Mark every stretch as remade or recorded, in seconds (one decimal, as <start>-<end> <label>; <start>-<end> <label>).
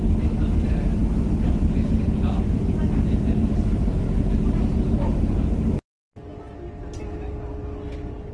0.0-8.3 recorded